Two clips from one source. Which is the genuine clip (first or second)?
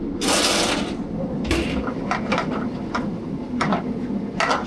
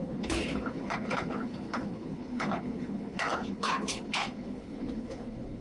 first